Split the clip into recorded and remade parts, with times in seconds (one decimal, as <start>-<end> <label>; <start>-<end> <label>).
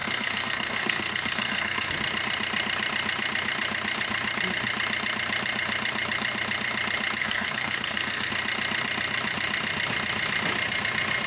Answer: 0.0-1.9 remade; 1.9-7.2 recorded; 7.2-8.3 remade; 8.3-11.3 recorded